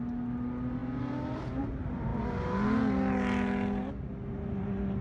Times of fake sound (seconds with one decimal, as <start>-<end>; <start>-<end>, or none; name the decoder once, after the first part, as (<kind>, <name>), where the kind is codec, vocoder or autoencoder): none

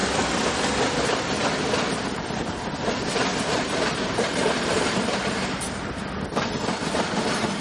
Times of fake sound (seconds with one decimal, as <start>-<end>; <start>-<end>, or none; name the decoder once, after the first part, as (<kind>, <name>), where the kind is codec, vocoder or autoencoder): 3.3-6.1 (vocoder, BigVGAN v2)

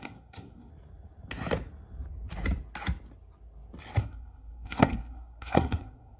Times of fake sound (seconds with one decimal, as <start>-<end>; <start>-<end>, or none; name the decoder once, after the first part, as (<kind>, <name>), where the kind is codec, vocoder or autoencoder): 0.0-0.7 (codec, SNAC); 4.0-6.2

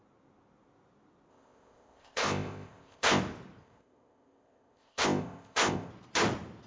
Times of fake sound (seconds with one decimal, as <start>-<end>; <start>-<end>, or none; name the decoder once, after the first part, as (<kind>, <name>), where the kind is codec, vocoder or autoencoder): 1.3-3.2 (codec, ZipCodec); 3.6-5.9

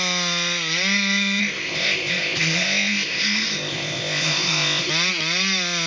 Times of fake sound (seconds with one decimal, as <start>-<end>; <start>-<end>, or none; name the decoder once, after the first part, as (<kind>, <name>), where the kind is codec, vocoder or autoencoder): 1.4-4.9 (codec, ZipCodec)

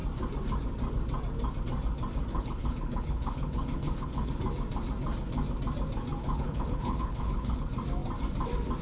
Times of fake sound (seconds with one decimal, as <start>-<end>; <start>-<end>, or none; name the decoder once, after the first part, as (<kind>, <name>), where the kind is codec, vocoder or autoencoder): 2.3-4.3 (codec, HILCodec); 6.2-7.6

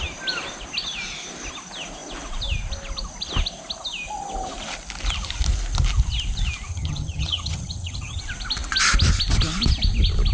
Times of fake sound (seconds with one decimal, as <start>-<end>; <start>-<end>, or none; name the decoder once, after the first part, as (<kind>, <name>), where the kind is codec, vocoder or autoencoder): 6.7-8.2 (vocoder, HiFi-GAN)